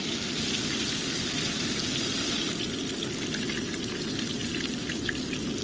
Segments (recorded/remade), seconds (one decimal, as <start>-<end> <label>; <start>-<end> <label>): 0.0-5.6 recorded